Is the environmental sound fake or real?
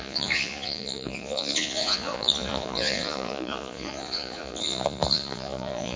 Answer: fake